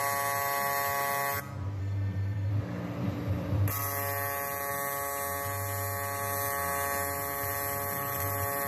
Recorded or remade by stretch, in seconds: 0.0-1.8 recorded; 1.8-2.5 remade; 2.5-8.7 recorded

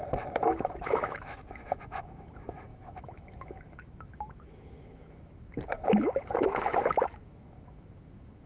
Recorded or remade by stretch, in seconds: 0.0-8.5 remade

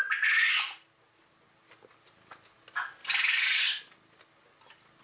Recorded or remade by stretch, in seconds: 0.0-5.0 recorded

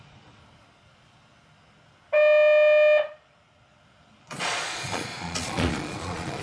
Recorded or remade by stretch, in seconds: 0.0-0.4 remade; 0.4-4.2 recorded; 4.2-6.4 remade

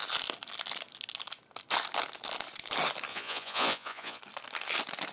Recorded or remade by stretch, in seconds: 0.0-3.1 recorded; 3.1-4.2 remade; 4.2-5.1 recorded

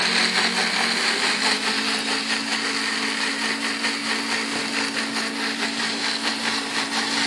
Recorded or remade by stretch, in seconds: 0.0-7.3 recorded

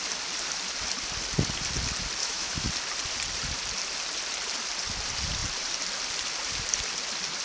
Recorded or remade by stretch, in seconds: 0.0-2.2 recorded; 2.2-2.7 remade; 2.7-7.4 recorded